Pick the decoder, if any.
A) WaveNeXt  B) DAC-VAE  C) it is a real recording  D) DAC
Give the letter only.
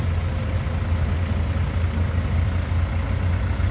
C